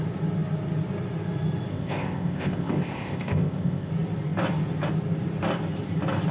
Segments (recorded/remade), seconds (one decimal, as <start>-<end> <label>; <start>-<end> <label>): 0.0-1.7 recorded; 1.7-3.9 remade; 3.9-6.3 recorded